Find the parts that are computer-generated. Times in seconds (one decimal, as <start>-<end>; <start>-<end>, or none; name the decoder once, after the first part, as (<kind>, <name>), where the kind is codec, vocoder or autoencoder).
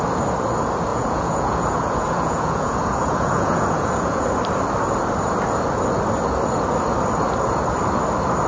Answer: 0.9-4.2 (vocoder, Vocos)